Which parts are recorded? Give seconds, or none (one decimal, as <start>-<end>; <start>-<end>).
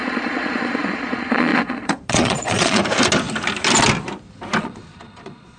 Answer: 2.8-4.6